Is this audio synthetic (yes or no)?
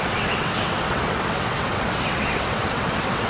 yes